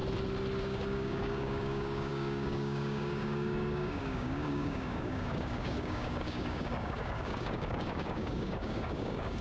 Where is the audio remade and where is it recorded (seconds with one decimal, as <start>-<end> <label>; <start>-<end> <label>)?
0.0-0.6 recorded; 0.6-9.4 remade